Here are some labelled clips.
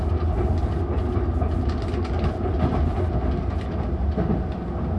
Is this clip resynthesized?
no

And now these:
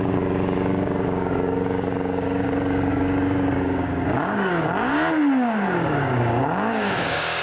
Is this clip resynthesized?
yes